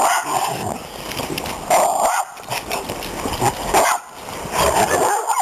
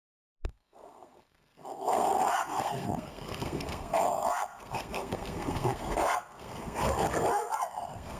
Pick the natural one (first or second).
first